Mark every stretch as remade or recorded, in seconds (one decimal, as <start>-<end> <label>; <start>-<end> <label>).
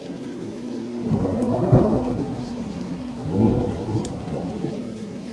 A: 0.0-5.3 remade